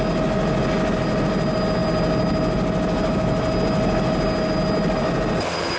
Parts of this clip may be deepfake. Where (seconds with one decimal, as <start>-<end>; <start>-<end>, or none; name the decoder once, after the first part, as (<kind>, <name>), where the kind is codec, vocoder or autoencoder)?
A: none